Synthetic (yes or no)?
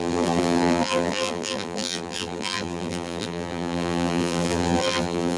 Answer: yes